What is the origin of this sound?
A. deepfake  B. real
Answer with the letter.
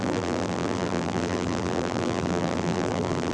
A